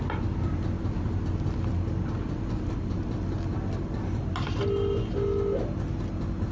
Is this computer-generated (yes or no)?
no